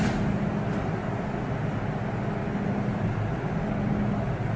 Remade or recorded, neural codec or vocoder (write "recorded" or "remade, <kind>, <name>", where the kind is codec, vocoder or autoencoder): recorded